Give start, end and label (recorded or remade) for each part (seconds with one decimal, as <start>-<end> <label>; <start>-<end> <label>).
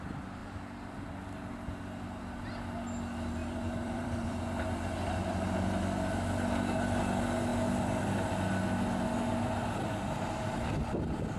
0.0-3.4 recorded; 3.4-4.4 remade; 4.4-11.4 recorded